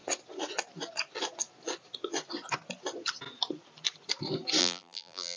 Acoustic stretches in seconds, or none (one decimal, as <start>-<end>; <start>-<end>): 0.0-4.6